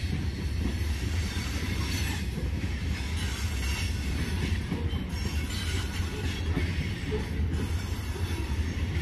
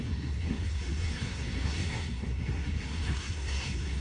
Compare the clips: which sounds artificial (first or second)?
second